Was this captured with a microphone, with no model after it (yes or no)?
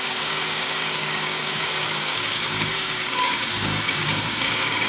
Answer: no